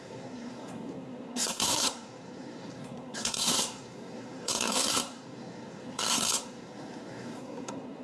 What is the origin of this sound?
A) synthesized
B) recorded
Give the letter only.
A